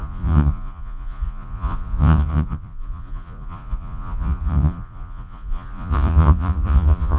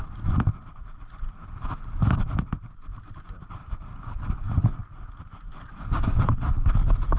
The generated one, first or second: first